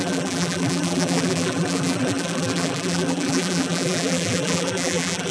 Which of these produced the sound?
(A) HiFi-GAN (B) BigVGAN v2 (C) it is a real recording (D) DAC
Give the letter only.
B